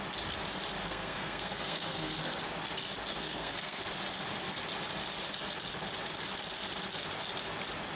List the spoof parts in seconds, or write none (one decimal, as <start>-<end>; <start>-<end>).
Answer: 0.8-2.2; 3.1-3.8